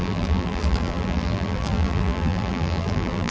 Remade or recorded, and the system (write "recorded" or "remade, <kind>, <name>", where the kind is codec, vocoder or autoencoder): remade, vocoder, BigVGAN v2